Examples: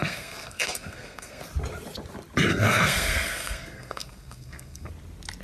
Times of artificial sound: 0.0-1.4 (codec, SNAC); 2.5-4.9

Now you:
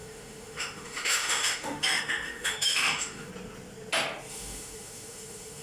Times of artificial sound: 0.0-3.3 (autoencoder, DAC-VAE); 4.3-5.6

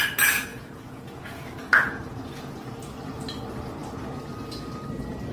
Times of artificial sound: 0.5-2.8 (vocoder, Vocos)

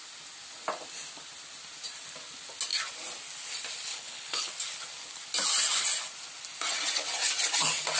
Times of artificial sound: 3.9-4.5 (codec, HILCodec)

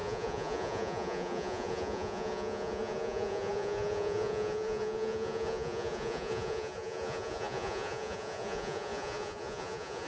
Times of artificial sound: 0.0-10.1 (vocoder, Vocos)

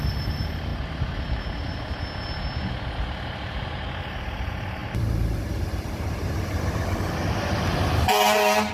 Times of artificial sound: 0.0-0.7 (vocoder, BigVGAN v2); 4.2-7.7